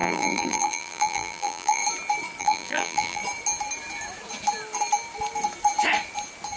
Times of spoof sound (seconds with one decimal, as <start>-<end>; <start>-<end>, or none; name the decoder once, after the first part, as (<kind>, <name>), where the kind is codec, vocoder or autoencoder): 0.0-1.8 (vocoder, BigVGAN v2); 2.4-3.2